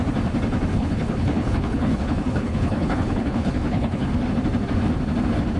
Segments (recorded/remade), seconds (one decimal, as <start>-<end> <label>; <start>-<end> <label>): 0.0-0.7 recorded; 0.7-4.1 remade; 4.1-5.6 recorded